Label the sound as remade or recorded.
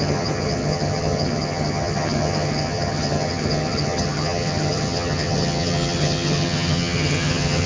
remade